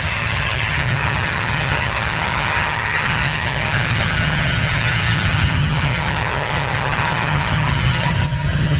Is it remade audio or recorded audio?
remade